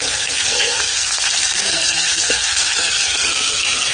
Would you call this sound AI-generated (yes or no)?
yes